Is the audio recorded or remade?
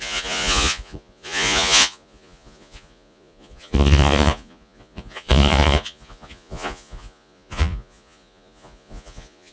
remade